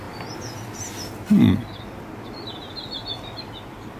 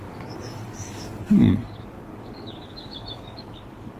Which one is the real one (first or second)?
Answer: first